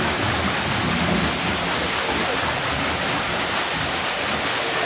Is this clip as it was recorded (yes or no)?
yes